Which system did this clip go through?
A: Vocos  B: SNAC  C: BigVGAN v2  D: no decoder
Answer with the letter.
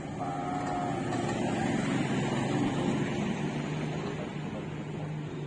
D